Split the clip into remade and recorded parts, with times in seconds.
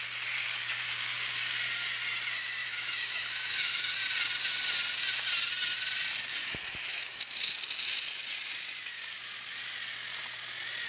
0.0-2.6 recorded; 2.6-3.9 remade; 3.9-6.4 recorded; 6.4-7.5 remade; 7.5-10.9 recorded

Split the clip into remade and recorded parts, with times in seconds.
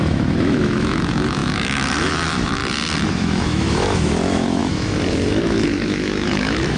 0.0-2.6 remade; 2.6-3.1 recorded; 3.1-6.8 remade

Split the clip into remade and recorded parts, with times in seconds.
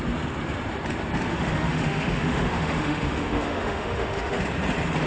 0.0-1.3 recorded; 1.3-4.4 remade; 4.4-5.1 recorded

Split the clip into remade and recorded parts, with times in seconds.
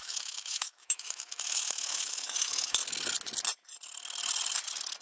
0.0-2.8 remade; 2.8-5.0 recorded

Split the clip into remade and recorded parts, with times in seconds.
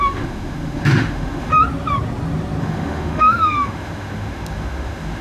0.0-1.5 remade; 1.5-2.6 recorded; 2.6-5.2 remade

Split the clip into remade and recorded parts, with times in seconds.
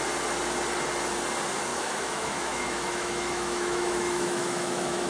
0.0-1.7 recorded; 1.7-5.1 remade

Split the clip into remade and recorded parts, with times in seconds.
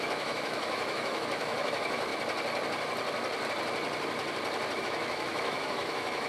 0.0-2.1 remade; 2.1-4.8 recorded; 4.8-6.3 remade